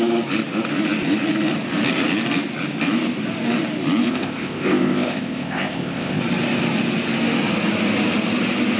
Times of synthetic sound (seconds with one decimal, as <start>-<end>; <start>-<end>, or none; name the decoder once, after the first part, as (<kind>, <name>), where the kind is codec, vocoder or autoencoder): 4.1-6.2 (codec, ZipCodec)